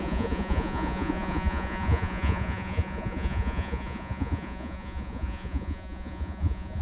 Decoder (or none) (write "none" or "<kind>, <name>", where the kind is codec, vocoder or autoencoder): vocoder, Vocos